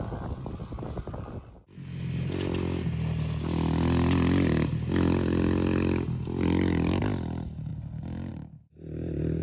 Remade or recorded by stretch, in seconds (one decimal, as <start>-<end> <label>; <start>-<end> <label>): 0.0-9.4 recorded